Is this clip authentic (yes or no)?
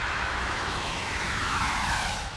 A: no